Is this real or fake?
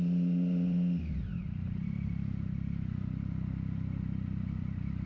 real